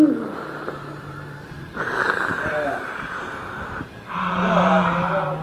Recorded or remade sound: remade